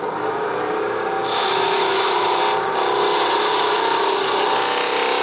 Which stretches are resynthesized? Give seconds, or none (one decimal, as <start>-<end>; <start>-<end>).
1.2-2.4